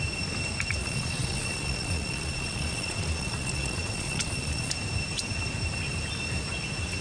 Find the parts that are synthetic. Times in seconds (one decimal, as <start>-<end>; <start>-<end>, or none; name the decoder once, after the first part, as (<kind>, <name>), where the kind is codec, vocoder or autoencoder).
0.8-4.7 (vocoder, Vocos)